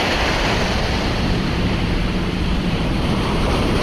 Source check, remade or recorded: remade